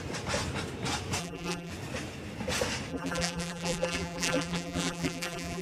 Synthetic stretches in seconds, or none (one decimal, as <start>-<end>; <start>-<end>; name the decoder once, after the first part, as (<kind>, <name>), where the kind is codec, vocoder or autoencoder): 1.2-1.7 (vocoder, BigVGAN v2); 2.9-5.6